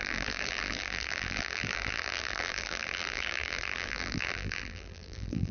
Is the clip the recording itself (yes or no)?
no